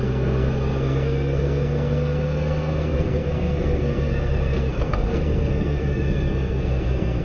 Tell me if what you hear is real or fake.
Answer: fake